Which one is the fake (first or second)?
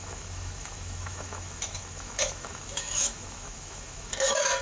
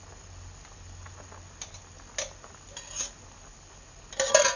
first